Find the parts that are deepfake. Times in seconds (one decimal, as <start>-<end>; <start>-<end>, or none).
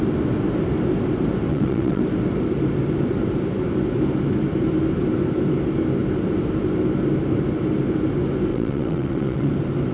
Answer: 1.5-2.0; 8.5-9.5